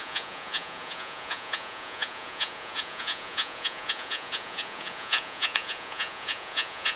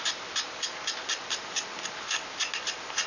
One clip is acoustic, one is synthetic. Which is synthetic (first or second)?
first